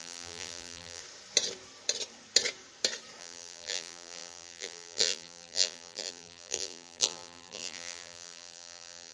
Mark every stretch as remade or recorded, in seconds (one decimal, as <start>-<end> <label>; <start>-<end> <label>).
0.0-1.0 remade; 1.0-3.2 recorded; 3.2-9.1 remade